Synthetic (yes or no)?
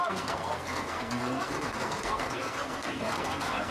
yes